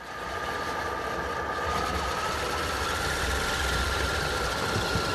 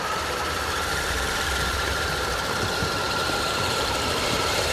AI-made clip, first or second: second